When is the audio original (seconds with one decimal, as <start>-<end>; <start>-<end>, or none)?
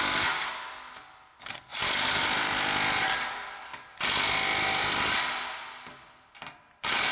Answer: 0.0-7.1